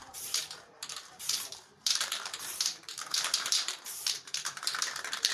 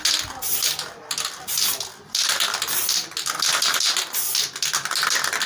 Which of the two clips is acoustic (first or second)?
second